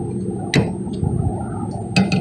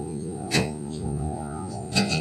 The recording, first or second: first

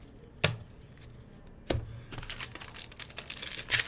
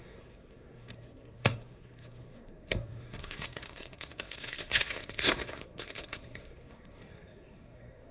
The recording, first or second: first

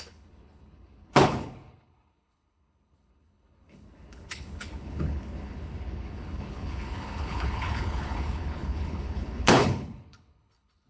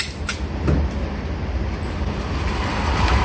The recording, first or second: second